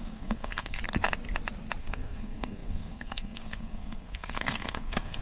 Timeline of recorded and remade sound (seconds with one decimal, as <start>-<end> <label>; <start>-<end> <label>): 0.0-0.8 remade; 0.8-1.8 recorded; 1.8-5.2 remade